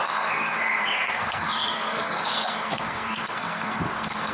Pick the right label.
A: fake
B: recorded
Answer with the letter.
A